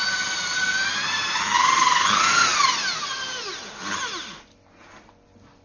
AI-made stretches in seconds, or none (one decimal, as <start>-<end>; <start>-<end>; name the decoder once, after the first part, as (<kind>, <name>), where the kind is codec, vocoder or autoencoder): none